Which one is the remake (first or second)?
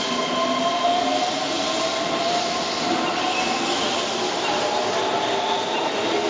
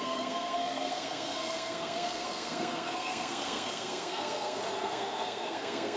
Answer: second